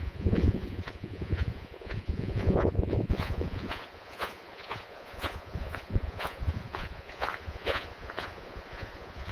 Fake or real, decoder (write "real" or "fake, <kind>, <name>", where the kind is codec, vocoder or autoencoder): fake, vocoder, Vocos